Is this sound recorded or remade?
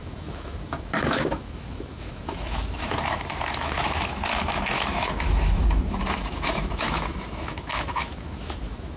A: remade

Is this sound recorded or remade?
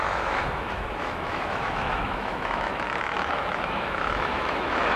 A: remade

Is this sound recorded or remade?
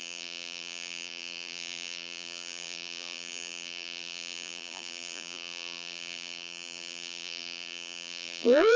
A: remade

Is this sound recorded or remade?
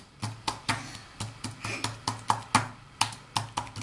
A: recorded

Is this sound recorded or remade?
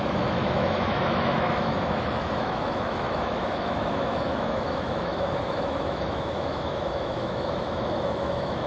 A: remade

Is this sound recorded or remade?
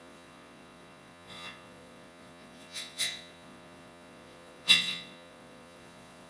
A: remade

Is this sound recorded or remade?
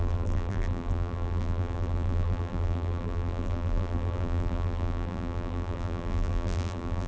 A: remade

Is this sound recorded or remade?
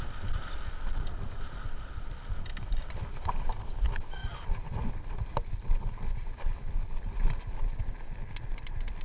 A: recorded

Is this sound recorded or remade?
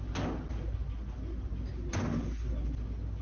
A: recorded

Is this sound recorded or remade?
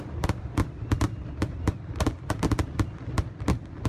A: remade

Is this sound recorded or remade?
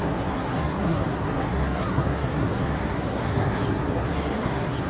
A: remade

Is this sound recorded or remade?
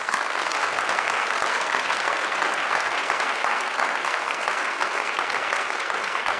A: remade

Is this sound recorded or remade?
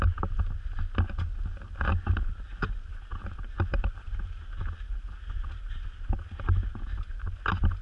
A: recorded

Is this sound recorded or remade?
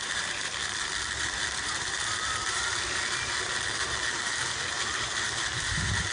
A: remade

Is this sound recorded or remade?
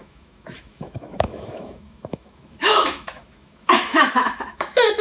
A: remade